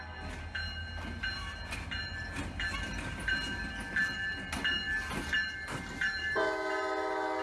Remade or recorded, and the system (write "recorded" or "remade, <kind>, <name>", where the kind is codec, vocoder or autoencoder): recorded